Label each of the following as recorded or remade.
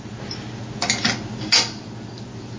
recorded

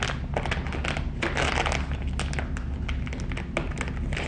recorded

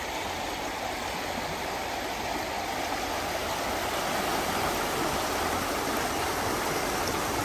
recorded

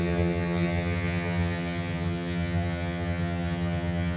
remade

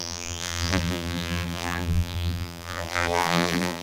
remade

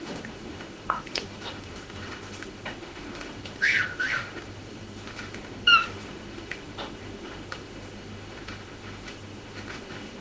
remade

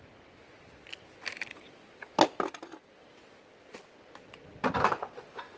recorded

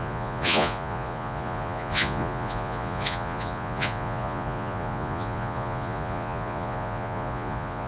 remade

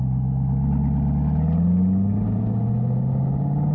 recorded